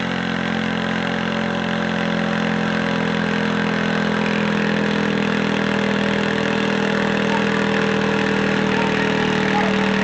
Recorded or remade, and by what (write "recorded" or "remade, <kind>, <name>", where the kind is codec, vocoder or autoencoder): recorded